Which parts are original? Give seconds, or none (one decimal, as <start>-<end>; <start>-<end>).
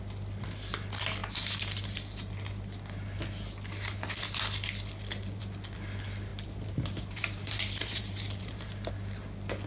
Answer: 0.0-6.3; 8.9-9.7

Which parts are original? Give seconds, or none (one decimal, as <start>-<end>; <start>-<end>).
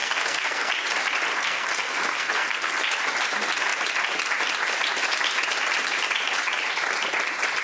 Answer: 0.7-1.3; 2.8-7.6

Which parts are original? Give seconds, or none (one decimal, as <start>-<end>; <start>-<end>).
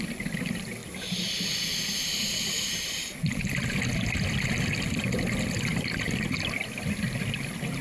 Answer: 0.0-7.8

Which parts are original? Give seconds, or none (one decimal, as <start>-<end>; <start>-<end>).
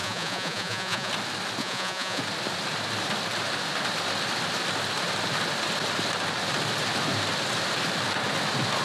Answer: 1.1-1.6; 2.2-8.8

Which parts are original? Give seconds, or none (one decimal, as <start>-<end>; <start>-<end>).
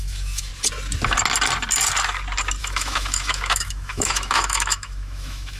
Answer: 0.5-2.6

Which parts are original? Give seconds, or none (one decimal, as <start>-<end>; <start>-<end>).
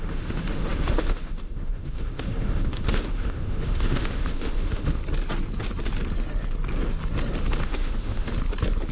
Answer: 5.0-7.6; 8.3-8.9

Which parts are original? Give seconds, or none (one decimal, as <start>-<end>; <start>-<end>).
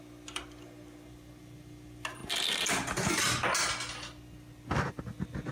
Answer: 0.0-5.5